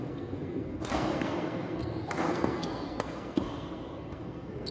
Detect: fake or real fake